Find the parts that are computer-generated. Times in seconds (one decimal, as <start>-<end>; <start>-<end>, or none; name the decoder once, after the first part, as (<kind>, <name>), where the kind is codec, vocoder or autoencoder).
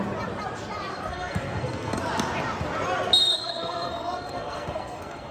0.9-2.0 (codec, SNAC); 3.2-5.3